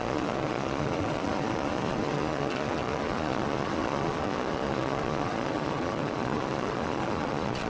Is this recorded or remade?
remade